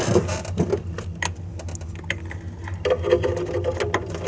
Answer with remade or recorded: recorded